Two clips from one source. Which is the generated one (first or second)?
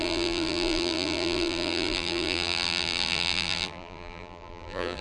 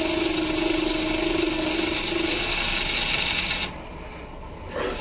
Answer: first